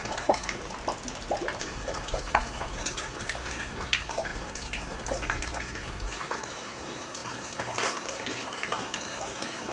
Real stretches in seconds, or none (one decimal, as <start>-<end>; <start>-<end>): 0.6-1.6